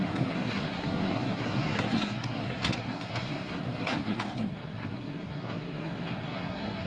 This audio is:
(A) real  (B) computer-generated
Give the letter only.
B